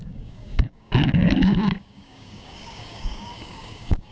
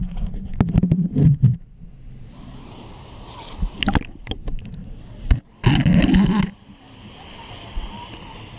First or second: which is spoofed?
first